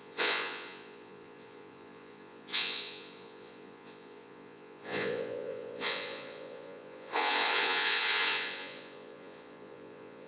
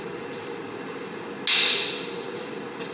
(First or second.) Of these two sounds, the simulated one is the first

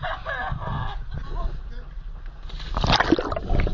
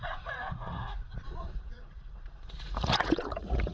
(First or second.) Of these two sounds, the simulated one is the second